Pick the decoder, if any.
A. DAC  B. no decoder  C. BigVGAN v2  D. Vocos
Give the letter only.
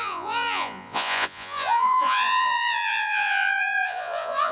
D